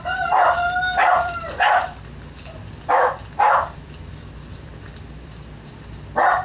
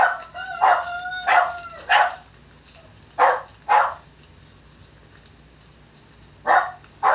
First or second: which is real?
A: second